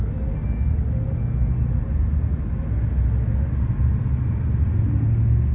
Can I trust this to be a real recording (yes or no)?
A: yes